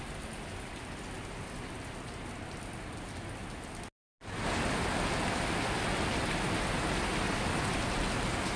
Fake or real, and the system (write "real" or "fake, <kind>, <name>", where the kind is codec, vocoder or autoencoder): real